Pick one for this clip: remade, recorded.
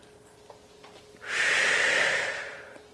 recorded